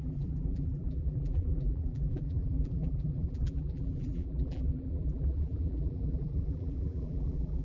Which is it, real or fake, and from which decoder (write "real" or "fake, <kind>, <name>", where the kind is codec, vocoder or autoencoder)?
fake, vocoder, BigVGAN v2